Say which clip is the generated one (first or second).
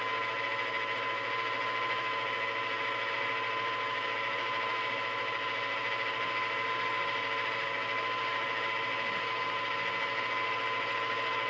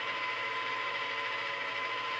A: second